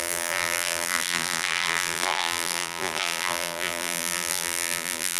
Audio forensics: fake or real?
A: fake